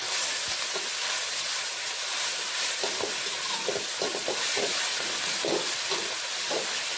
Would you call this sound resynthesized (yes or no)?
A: no